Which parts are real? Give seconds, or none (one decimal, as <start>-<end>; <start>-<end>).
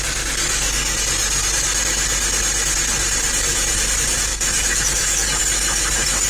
0.0-4.3; 5.4-6.3